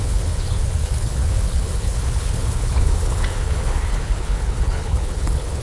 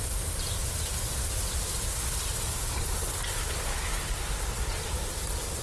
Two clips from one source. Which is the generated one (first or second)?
first